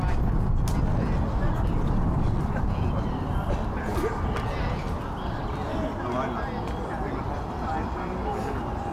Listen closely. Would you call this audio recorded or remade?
recorded